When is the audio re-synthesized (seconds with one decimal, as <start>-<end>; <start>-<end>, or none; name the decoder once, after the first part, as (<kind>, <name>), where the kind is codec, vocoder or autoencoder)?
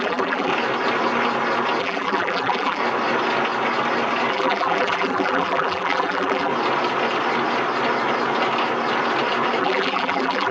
0.0-0.5 (vocoder, BigVGAN v2); 1.8-2.8; 4.3-6.5; 9.6-10.5